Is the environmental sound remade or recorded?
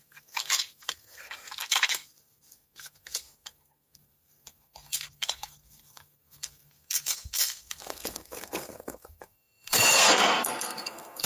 remade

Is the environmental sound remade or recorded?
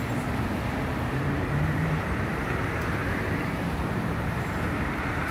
remade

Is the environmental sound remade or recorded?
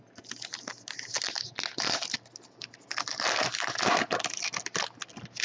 recorded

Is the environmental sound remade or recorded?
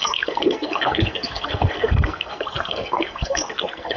remade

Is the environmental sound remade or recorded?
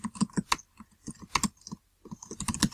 recorded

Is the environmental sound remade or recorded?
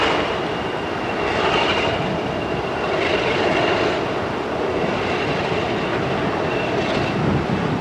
recorded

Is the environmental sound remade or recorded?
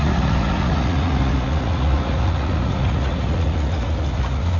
remade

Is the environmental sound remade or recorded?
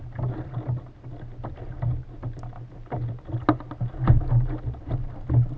recorded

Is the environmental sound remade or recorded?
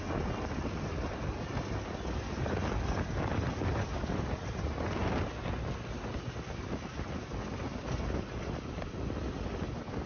recorded